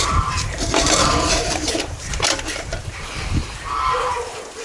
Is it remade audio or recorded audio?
remade